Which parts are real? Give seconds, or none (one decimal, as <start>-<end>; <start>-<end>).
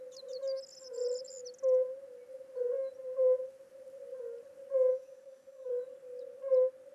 0.0-4.9; 5.7-6.9